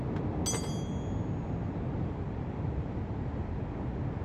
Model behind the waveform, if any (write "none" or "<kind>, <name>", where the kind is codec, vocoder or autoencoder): none